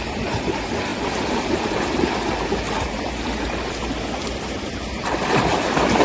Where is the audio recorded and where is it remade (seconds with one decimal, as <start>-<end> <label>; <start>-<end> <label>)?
0.0-6.0 recorded